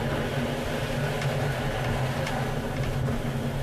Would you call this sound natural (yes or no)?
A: yes